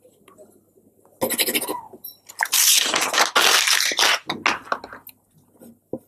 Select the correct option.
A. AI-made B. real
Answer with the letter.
B